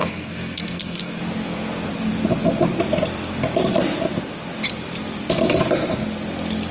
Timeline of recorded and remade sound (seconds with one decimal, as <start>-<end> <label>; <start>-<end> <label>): 0.0-1.2 remade; 1.2-6.7 recorded